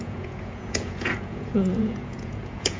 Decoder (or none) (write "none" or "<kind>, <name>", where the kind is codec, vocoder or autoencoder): vocoder, Vocos